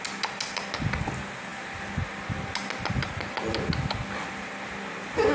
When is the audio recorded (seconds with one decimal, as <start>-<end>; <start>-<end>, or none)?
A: 0.0-5.3